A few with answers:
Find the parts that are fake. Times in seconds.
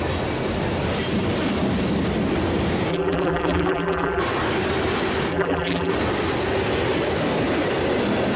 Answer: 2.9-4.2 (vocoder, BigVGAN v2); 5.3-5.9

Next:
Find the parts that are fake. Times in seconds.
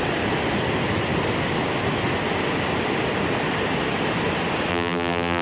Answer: 4.7-5.4 (vocoder, BigVGAN v2)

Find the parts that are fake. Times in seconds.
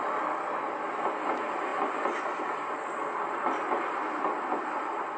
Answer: none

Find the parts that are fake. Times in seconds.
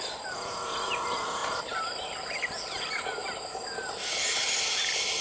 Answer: 0.0-5.2 (vocoder, BigVGAN v2)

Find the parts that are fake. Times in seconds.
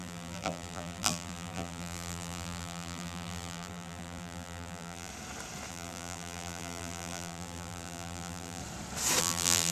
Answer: 0.0-5.1 (vocoder, BigVGAN v2); 5.7-8.6; 9.2-9.7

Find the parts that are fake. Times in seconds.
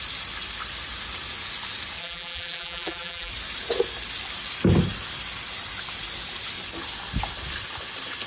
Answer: 2.0-3.3 (vocoder, BigVGAN v2)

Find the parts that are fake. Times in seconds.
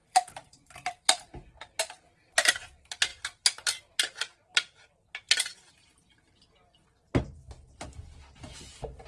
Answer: 0.0-1.8 (vocoder, BigVGAN v2)